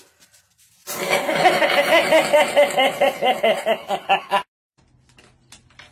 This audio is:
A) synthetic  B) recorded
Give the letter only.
B